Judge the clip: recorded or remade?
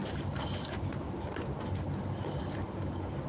recorded